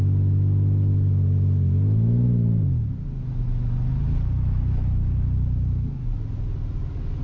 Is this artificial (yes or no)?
no